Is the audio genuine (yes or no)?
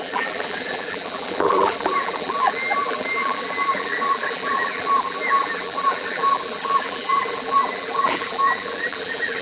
no